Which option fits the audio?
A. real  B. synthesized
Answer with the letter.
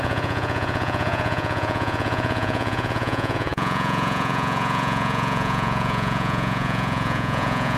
B